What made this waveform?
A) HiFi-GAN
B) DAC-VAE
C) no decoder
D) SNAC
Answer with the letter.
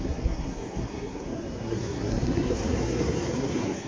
D